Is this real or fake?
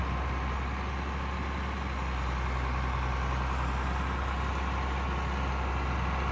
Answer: real